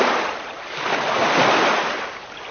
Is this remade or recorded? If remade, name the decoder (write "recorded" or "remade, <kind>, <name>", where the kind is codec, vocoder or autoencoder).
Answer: recorded